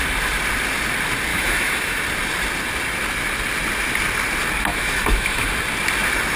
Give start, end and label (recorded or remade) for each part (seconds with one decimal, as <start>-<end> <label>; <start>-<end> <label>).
0.0-1.3 recorded; 1.3-2.0 remade; 2.0-4.7 recorded; 4.7-5.5 remade; 5.5-6.4 recorded